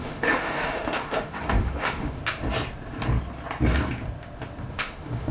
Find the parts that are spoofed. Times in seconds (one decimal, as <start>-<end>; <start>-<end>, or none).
0.0-2.2; 4.7-5.3